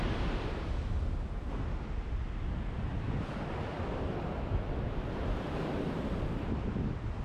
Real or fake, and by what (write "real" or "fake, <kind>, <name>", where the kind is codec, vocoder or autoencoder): real